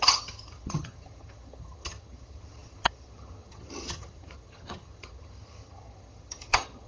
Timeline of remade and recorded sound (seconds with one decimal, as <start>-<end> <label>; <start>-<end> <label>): 0.0-6.9 remade